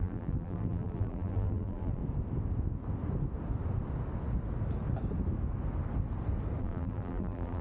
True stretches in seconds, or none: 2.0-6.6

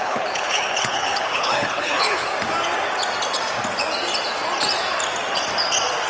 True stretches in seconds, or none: 2.3-6.1